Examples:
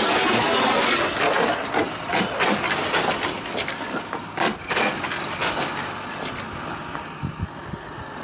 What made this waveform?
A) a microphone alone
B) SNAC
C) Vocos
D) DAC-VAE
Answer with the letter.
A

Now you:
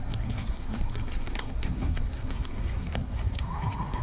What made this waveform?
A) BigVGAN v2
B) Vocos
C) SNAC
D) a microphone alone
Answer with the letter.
C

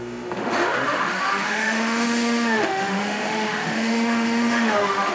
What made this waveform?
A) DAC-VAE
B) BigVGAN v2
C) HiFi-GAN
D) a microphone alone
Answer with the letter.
A